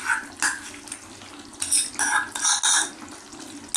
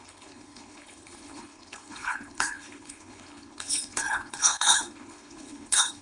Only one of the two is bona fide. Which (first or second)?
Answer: first